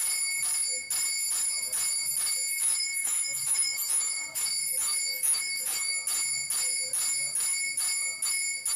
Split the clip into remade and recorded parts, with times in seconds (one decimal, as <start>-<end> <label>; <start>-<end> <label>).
0.0-2.6 recorded; 2.6-4.5 remade; 4.5-5.1 recorded; 5.1-5.9 remade; 5.9-8.8 recorded